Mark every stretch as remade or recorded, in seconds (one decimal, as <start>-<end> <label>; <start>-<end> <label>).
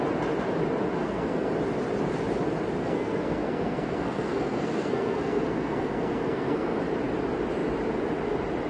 0.0-1.0 recorded; 1.0-1.5 remade; 1.5-2.8 recorded; 2.8-6.8 remade; 6.8-8.7 recorded